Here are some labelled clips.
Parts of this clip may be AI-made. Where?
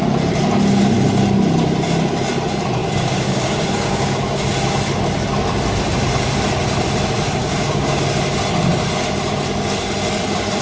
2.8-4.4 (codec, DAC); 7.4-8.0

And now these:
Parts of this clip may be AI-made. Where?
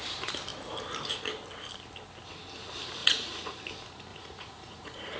3.0-3.6 (vocoder, Vocos); 4.1-5.2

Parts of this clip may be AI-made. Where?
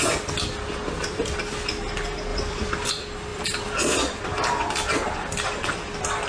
2.3-2.9 (vocoder, BigVGAN v2); 3.3-4.2